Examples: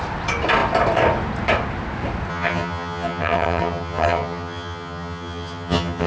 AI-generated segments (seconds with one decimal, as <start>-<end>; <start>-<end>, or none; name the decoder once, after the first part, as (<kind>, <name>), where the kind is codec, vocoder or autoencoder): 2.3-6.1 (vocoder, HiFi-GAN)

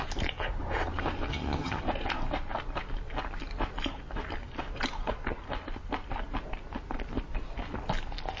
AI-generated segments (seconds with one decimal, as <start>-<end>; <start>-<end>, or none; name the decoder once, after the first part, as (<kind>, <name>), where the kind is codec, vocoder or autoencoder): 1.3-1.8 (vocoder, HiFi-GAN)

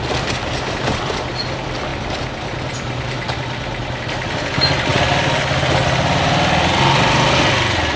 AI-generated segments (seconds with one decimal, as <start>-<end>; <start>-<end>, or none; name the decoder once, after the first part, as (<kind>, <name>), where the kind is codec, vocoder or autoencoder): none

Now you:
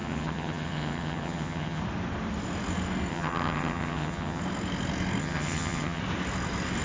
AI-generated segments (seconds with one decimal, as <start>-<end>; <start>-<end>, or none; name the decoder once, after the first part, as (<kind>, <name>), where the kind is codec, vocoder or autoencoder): 0.0-1.8 (vocoder, HiFi-GAN); 3.1-4.4; 5.2-6.0

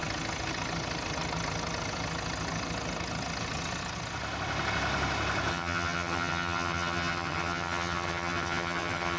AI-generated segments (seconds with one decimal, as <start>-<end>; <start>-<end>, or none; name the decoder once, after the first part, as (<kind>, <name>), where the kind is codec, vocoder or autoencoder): 5.5-9.2 (vocoder, HiFi-GAN)